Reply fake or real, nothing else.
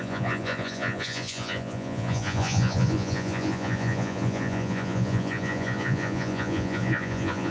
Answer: fake